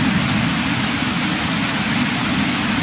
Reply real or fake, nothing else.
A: real